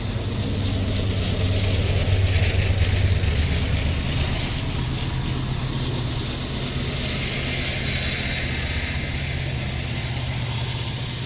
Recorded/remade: recorded